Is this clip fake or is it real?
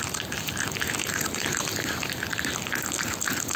real